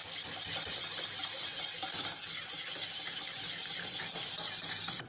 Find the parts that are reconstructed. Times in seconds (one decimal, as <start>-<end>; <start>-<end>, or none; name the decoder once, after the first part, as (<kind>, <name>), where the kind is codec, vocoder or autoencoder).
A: none